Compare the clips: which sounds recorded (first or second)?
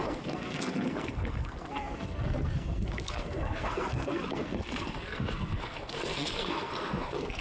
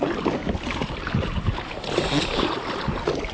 second